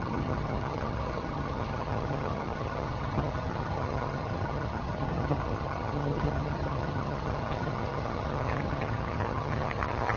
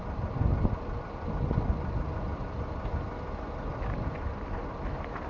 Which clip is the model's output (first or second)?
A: first